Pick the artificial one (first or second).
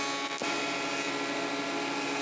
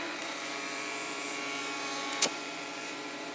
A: second